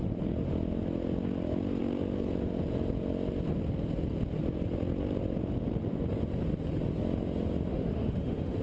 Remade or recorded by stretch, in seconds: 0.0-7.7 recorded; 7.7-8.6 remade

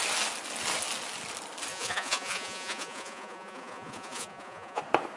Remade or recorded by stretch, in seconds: 0.0-1.7 recorded; 1.7-4.8 remade; 4.8-5.2 recorded

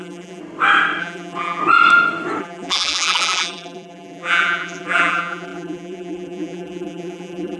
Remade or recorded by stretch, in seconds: 0.0-0.4 remade; 0.4-1.0 recorded; 1.0-1.6 remade; 1.6-2.4 recorded; 2.4-7.6 remade

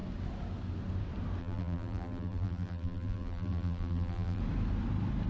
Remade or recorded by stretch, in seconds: 0.0-1.4 recorded; 1.4-4.4 remade; 4.4-5.3 recorded

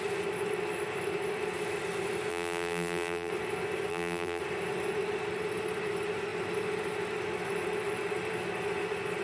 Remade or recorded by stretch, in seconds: 0.0-2.3 recorded; 2.3-3.3 remade; 3.3-3.9 recorded; 3.9-4.4 remade; 4.4-9.2 recorded

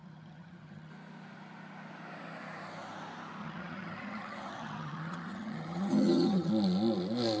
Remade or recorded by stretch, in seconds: 0.0-0.9 remade; 0.9-3.4 recorded; 3.4-6.5 remade; 6.5-7.4 recorded

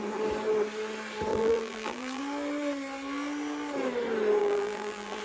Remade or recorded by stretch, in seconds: 0.0-1.3 recorded; 1.3-2.2 remade; 2.2-4.4 recorded; 4.4-5.2 remade

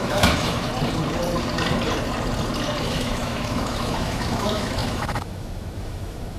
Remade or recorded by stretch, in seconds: 0.0-0.7 remade; 0.7-2.8 recorded; 2.8-6.4 remade